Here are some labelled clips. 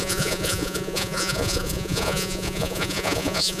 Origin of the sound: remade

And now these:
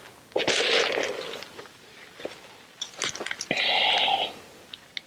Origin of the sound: recorded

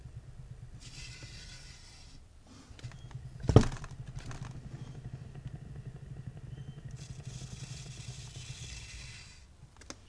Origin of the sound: recorded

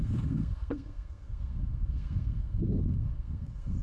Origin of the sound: remade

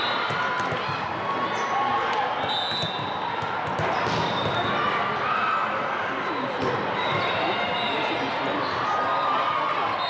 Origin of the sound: recorded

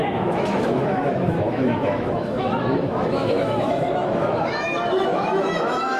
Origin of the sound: remade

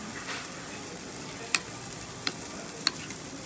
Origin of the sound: recorded